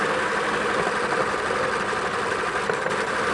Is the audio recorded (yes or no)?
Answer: yes